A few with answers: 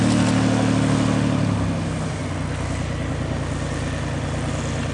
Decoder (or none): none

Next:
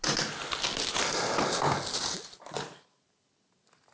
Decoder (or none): none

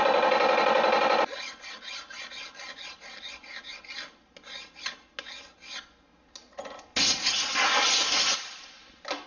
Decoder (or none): none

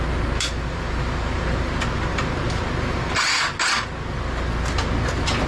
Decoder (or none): none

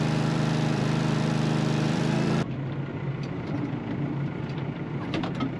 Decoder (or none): vocoder, BigVGAN v2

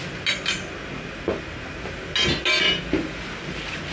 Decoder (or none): none